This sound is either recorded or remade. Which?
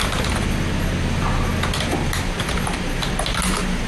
recorded